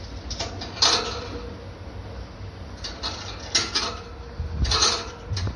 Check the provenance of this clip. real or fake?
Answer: real